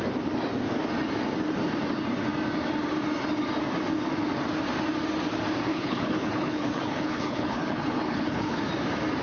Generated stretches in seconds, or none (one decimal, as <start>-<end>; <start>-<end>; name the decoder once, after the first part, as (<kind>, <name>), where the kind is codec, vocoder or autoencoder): 5.7-8.6 (codec, HILCodec)